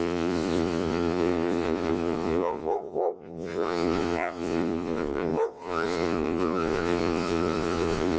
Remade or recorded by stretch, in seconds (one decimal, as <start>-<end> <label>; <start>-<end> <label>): 0.0-8.2 remade